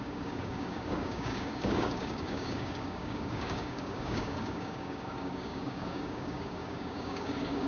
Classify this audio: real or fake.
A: fake